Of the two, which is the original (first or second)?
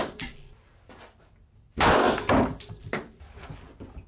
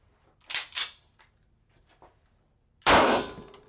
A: second